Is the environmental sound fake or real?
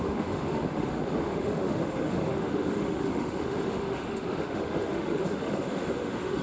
fake